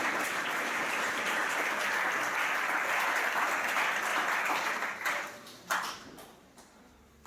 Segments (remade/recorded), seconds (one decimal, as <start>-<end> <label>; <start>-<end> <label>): 0.0-1.4 remade; 1.4-4.1 recorded; 4.1-5.9 remade; 5.9-7.3 recorded